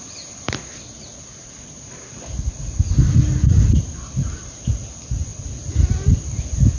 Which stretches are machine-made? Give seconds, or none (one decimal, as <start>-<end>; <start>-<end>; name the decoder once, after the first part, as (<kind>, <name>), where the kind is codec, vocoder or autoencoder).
none